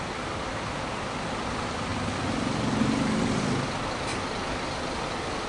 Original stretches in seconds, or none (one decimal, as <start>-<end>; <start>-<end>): 0.0-5.5